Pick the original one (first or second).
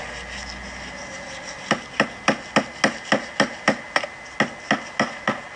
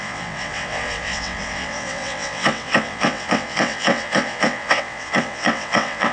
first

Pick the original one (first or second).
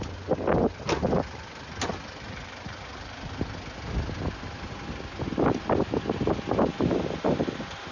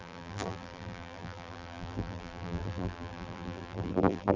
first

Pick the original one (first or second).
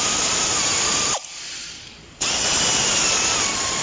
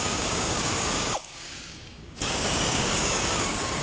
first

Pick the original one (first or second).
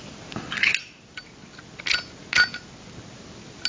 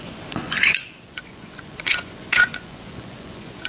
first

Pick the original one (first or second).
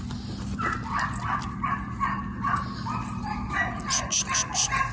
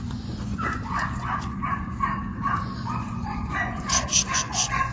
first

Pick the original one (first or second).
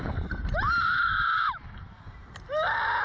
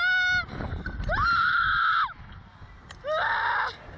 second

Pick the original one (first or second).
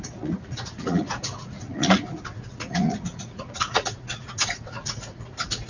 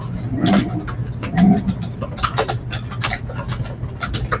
second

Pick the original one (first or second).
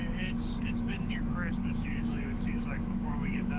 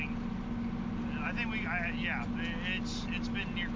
second